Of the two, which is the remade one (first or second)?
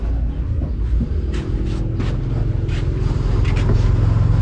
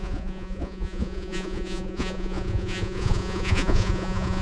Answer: second